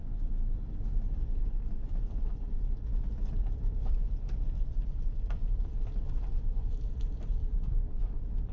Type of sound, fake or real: fake